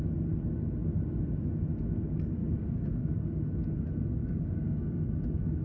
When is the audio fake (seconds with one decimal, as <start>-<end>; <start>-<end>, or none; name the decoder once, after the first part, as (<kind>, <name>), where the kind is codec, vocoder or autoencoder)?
2.4-3.1 (codec, DAC); 4.2-4.9